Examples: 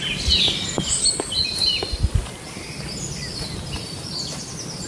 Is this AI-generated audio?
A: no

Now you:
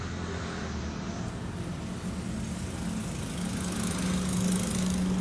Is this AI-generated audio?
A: no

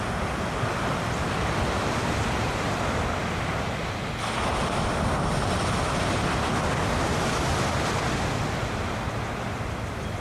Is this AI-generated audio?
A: no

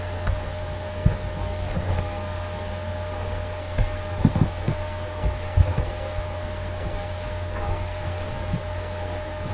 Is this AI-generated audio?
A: yes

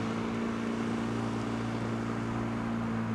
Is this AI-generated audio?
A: no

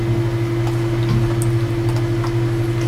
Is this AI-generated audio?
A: no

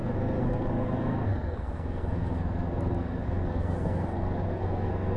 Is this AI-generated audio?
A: yes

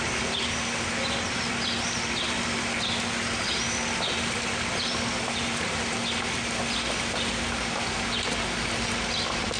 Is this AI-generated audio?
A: no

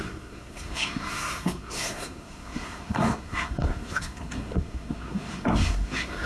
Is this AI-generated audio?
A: yes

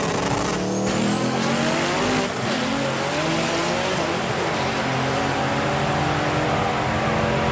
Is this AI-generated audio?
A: no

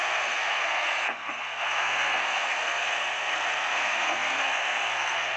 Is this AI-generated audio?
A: yes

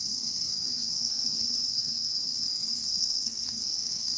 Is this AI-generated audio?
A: yes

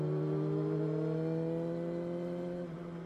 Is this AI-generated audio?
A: no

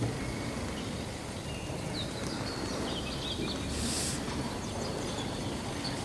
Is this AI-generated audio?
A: no